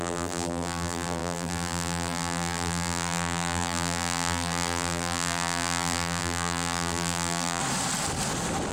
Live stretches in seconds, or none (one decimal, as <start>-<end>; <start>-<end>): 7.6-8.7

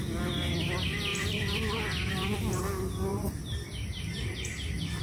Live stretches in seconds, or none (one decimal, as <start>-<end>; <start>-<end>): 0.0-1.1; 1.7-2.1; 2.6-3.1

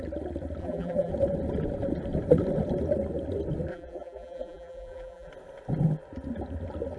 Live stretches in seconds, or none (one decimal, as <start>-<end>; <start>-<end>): 0.0-0.6; 1.1-3.7; 5.3-7.0

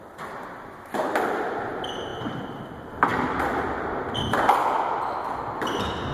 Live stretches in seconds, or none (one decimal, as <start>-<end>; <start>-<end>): 0.0-2.1; 2.6-3.1; 3.9-6.1